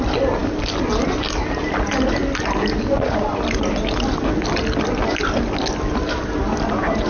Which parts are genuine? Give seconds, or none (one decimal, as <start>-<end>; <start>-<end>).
0.0-7.1